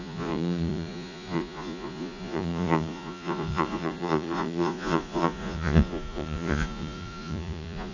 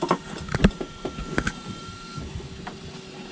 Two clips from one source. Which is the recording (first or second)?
second